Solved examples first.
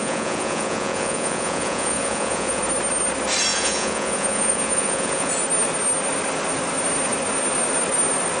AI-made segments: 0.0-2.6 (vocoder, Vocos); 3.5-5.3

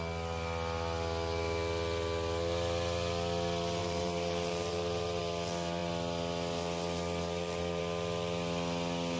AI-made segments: 3.8-5.2 (vocoder, BigVGAN v2)

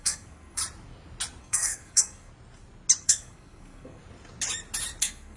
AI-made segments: 0.0-0.6 (codec, SNAC); 1.4-2.3; 3.0-4.0; 5.0-5.4

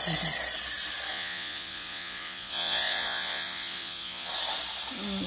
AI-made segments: 1.1-4.3 (vocoder, Vocos)

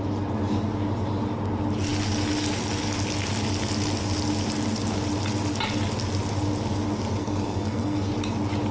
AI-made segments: 7.2-8.1 (codec, SNAC)

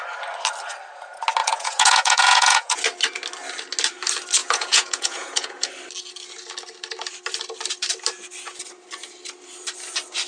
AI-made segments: 1.4-2.8 (vocoder, Vocos); 4.4-5.7

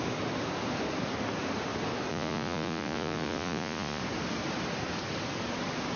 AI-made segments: 2.1-4.0 (vocoder, Vocos)

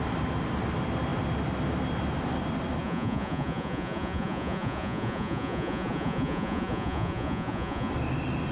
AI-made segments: 2.8-7.9 (vocoder, Vocos)